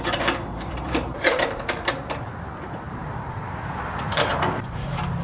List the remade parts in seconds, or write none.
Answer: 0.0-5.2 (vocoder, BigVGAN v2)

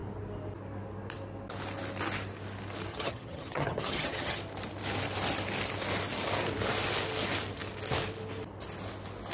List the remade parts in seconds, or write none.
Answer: 2.9-4.4 (vocoder, HiFi-GAN)

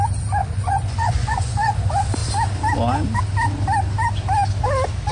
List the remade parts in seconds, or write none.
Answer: 0.4-1.7 (vocoder, Vocos)

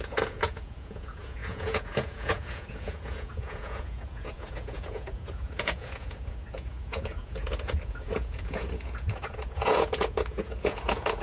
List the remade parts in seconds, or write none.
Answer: 0.0-11.2 (vocoder, Vocos)

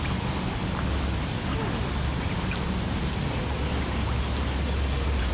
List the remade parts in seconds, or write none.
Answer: 2.1-5.3 (vocoder, BigVGAN v2)

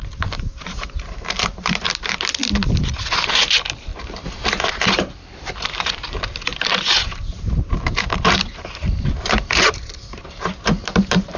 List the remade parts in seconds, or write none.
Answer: 0.0-2.4 (vocoder, BigVGAN v2); 3.2-11.4

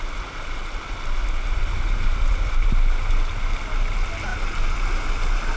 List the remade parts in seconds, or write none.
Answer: none

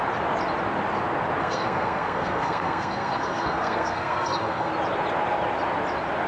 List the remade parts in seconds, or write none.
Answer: 1.4-4.7 (codec, SNAC)